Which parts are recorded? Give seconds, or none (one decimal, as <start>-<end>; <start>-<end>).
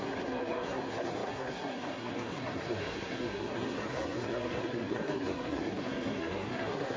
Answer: none